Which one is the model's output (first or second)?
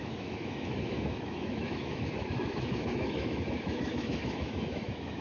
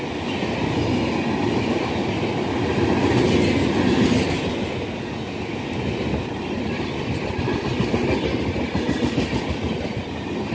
first